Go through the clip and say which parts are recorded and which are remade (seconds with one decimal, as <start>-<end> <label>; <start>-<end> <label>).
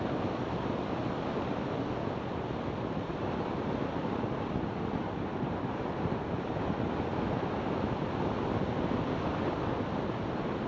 0.0-5.3 recorded; 5.3-6.6 remade; 6.6-10.7 recorded